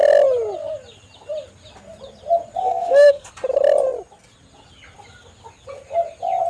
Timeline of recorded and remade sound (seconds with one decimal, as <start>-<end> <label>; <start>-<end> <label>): 0.0-2.6 recorded; 2.6-3.3 remade; 3.3-6.5 recorded